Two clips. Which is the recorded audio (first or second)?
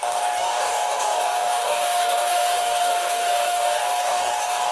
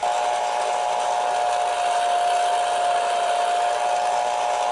second